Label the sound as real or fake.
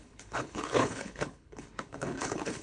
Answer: fake